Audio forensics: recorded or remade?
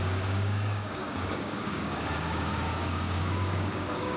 remade